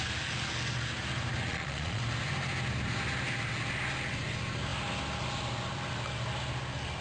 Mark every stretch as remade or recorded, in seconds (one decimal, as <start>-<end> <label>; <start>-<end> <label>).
0.0-1.5 recorded; 1.5-2.0 remade; 2.0-7.0 recorded